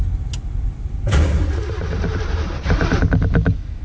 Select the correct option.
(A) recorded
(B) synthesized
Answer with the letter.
A